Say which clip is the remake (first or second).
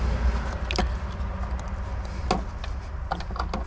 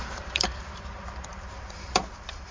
second